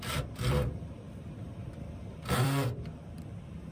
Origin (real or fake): fake